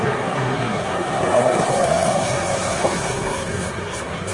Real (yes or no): no